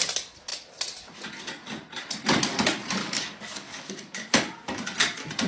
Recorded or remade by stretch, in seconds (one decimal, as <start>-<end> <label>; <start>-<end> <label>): 0.0-3.0 recorded; 3.0-4.3 remade; 4.3-5.5 recorded

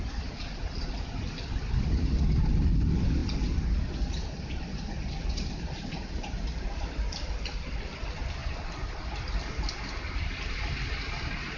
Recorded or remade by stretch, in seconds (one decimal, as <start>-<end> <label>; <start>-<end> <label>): 0.0-11.6 recorded

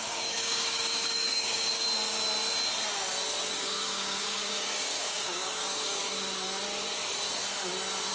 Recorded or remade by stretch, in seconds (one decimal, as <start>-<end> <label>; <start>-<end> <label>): 0.0-1.8 remade; 1.8-3.6 recorded; 3.6-6.0 remade; 6.0-8.1 recorded